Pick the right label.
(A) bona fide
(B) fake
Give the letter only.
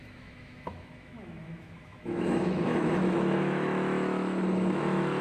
B